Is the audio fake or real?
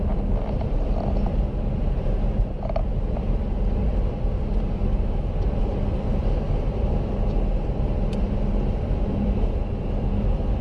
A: fake